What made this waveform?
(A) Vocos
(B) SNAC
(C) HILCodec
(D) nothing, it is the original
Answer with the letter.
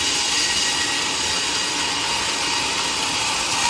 D